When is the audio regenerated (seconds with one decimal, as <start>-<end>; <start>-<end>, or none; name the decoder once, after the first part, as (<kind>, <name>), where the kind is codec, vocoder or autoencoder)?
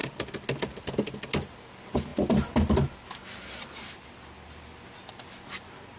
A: none